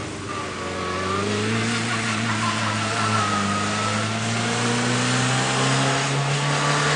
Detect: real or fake real